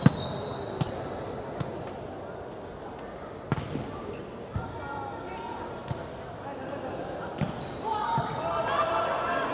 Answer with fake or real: real